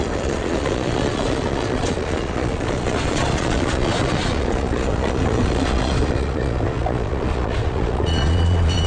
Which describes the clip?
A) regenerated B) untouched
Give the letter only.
A